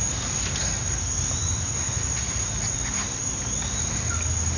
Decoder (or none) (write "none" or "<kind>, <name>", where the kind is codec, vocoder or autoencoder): none